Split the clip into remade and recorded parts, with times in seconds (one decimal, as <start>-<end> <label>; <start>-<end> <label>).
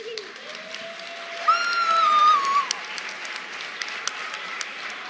0.0-5.1 recorded